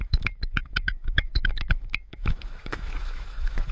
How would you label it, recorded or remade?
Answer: remade